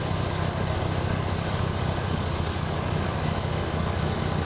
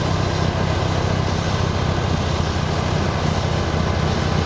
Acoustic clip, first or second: second